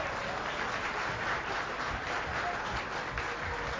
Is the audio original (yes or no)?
yes